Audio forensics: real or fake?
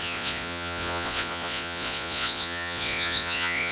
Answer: fake